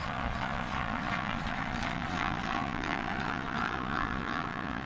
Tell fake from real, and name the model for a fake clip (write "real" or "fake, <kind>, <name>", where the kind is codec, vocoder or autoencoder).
fake, vocoder, Vocos